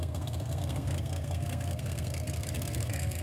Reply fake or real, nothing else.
fake